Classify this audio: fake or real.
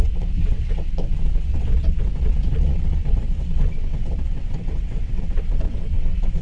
fake